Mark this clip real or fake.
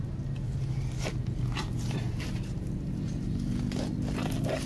real